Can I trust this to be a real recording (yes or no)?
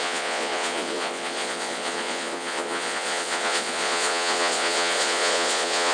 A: no